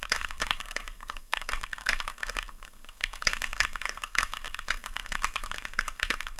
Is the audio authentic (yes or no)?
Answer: no